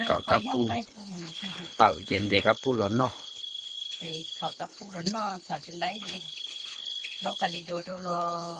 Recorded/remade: remade